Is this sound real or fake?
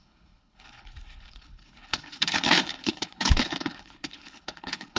fake